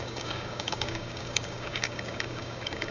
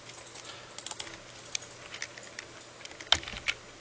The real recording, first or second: second